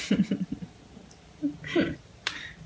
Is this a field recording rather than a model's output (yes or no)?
no